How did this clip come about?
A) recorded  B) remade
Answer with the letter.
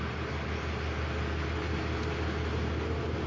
A